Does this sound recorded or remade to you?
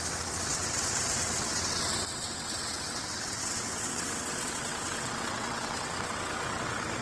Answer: remade